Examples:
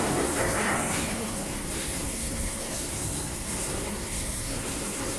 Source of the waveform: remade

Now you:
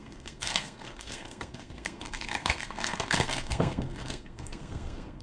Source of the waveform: remade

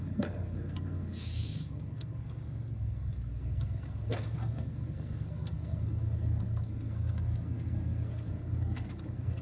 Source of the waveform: remade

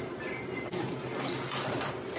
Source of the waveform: recorded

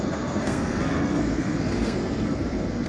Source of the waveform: remade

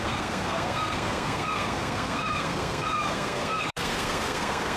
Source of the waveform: remade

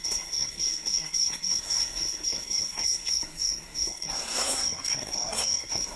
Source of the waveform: remade